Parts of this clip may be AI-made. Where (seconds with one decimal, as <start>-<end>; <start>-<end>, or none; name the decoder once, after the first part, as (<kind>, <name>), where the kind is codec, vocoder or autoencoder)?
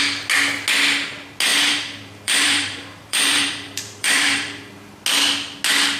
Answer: 1.5-5.0 (vocoder, BigVGAN v2)